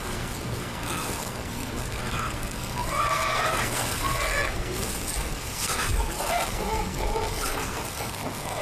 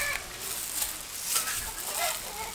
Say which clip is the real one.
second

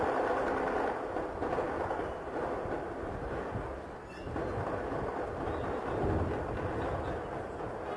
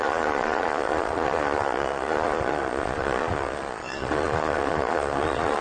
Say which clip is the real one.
first